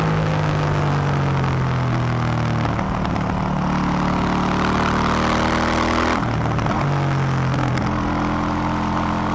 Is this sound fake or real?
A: real